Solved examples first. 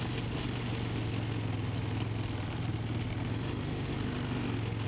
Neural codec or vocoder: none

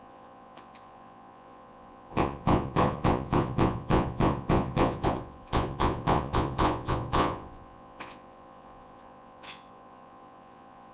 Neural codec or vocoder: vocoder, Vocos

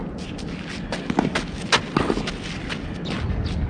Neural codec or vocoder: none